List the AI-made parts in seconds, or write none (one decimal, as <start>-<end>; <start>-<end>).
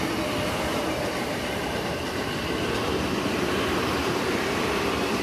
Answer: 0.7-2.6; 4.0-4.8